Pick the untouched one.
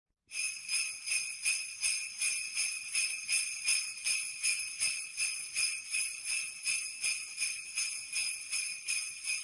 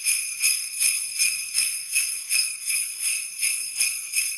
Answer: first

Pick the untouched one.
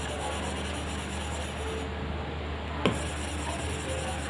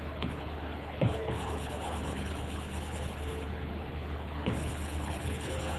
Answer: first